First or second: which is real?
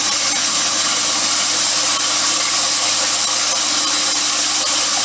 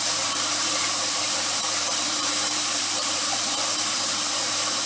first